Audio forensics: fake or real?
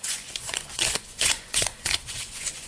fake